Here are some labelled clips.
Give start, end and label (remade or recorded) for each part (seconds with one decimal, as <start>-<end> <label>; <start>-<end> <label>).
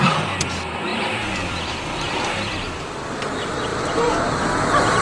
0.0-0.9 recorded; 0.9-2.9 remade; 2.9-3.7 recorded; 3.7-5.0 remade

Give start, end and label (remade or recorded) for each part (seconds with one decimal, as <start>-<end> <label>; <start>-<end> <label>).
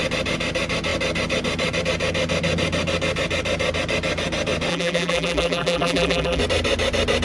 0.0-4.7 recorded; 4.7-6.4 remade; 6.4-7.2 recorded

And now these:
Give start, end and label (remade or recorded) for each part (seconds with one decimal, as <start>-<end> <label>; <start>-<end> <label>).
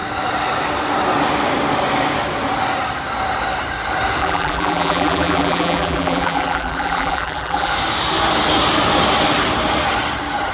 0.0-4.2 recorded; 4.2-7.7 remade; 7.7-10.5 recorded